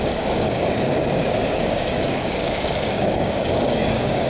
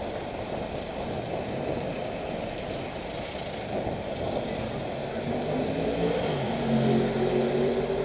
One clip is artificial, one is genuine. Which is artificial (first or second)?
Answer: first